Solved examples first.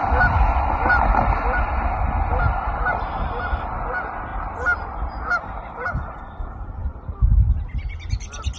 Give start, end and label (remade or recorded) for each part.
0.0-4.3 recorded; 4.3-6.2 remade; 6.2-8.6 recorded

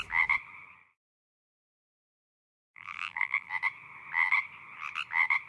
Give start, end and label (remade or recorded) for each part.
0.0-1.9 recorded; 1.9-3.5 remade; 3.5-5.5 recorded

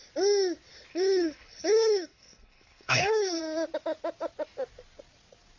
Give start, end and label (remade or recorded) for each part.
0.0-0.9 recorded; 0.9-3.4 remade; 3.4-5.6 recorded